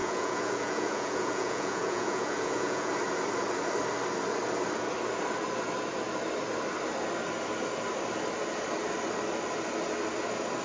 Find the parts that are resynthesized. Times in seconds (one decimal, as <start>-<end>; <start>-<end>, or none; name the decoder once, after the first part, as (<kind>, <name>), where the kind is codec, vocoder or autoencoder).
0.0-2.9 (vocoder, Vocos)